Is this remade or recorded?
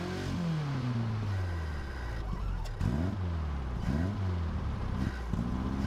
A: recorded